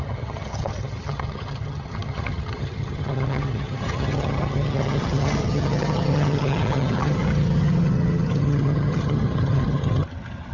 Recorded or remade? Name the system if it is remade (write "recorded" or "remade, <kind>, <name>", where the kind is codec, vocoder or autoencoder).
remade, vocoder, HiFi-GAN